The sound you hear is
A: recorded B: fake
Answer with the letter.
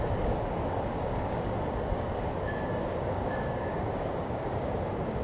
B